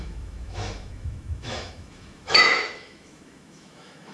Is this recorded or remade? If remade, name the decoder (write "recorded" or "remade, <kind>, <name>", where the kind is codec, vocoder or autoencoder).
remade, autoencoder, DAC-VAE